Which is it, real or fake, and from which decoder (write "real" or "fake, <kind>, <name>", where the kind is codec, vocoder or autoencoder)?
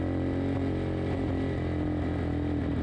real